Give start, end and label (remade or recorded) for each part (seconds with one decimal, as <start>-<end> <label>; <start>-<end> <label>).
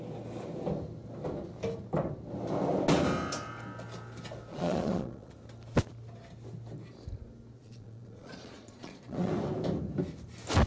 0.0-4.5 recorded; 4.5-5.3 remade; 5.3-7.6 recorded; 7.6-9.3 remade; 9.3-10.7 recorded